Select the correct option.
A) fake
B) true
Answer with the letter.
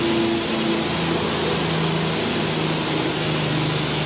B